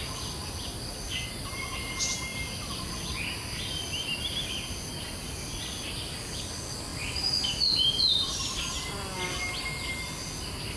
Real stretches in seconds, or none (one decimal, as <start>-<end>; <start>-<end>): 0.0-10.8